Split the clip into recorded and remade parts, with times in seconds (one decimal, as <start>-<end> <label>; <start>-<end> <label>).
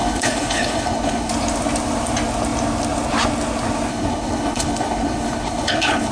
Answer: 0.0-1.3 remade; 1.3-3.9 recorded; 3.9-6.1 remade